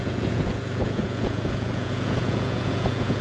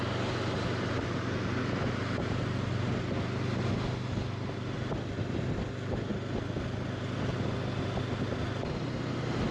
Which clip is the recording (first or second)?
second